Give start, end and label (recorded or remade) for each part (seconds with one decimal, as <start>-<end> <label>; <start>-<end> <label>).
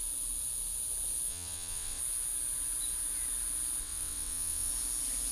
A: 0.0-1.3 recorded; 1.3-2.0 remade; 2.0-3.8 recorded; 3.8-4.7 remade; 4.7-5.3 recorded